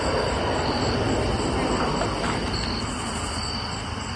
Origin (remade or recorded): recorded